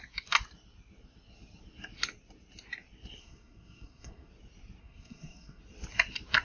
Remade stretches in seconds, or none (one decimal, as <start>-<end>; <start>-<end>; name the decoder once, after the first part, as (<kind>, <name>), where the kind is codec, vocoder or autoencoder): 3.2-4.3 (codec, SNAC); 4.8-5.6